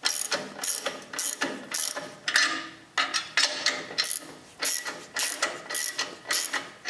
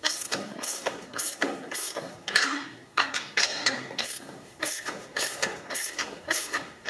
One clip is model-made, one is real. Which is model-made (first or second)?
second